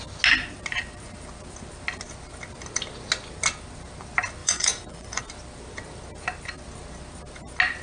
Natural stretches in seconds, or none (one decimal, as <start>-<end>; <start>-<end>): 0.0-4.4; 5.2-7.8